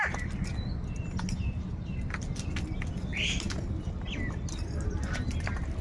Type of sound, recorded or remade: recorded